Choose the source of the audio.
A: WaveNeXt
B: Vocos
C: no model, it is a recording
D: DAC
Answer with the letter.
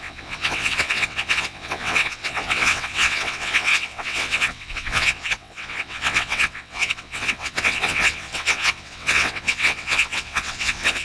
A